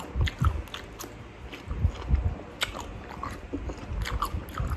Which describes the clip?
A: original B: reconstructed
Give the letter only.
A